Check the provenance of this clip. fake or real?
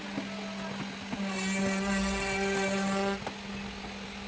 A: real